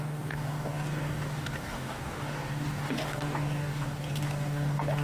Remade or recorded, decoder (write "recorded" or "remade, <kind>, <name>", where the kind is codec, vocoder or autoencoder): remade, codec, DAC